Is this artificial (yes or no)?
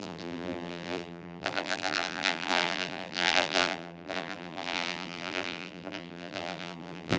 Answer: yes